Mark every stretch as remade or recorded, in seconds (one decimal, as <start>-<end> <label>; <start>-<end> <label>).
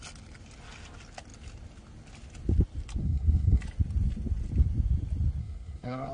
0.0-3.0 recorded; 3.0-3.6 remade; 3.6-5.4 recorded; 5.4-6.1 remade